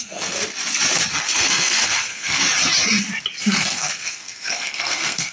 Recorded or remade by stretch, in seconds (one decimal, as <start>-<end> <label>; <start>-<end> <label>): 0.0-0.4 remade; 0.4-1.1 recorded; 1.1-2.4 remade; 2.4-3.4 recorded; 3.4-5.3 remade